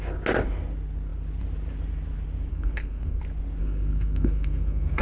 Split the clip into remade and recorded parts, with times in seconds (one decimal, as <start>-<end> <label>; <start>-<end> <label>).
0.0-2.5 recorded; 2.5-3.2 remade; 3.2-3.6 recorded; 3.6-5.0 remade